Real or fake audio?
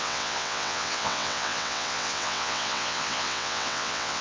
fake